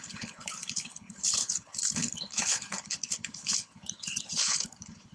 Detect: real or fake fake